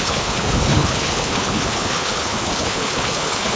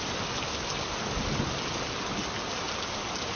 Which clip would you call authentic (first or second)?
second